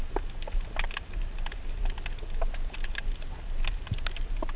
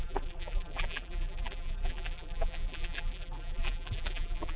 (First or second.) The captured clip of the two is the first